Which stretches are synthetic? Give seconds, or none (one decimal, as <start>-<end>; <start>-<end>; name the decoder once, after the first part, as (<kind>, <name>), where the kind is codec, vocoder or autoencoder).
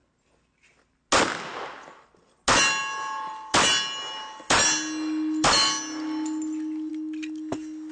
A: none